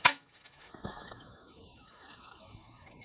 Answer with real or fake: fake